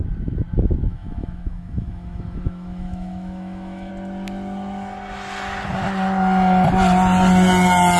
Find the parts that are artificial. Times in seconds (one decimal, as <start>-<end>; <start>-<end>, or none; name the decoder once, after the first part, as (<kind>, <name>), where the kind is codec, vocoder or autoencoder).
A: 0.9-3.9 (autoencoder, DAC-VAE)